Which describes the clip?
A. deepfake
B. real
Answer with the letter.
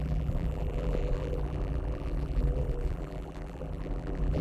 A